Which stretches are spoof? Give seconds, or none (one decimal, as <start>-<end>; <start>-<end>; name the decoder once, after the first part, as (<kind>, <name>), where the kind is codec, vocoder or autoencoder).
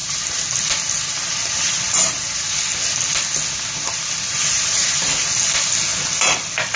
5.9-6.8 (vocoder, BigVGAN v2)